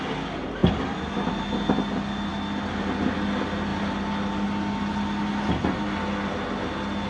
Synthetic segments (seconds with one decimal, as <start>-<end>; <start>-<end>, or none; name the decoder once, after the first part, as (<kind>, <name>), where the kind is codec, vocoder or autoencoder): none